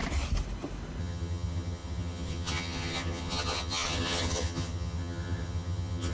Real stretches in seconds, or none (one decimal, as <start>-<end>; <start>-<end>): 0.0-1.0